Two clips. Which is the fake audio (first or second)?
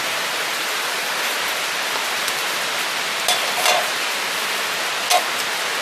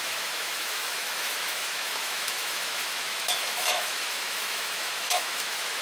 second